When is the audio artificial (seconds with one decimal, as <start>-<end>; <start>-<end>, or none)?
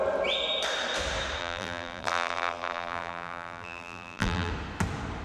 1.4-4.5